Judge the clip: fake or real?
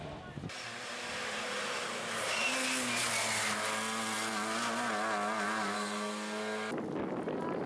real